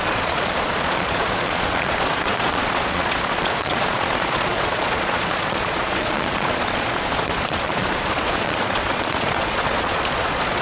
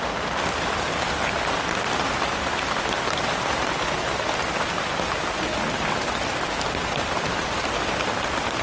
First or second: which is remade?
first